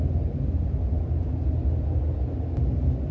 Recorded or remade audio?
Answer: recorded